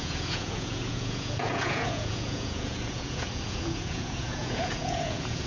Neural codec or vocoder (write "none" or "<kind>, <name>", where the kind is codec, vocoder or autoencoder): vocoder, Vocos